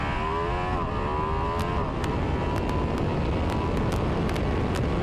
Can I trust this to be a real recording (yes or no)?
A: yes